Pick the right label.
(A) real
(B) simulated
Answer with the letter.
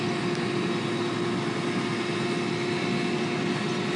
A